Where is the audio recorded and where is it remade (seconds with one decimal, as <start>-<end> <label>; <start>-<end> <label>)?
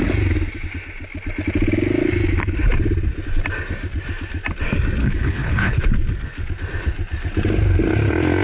0.0-5.0 recorded; 5.0-5.8 remade; 5.8-8.4 recorded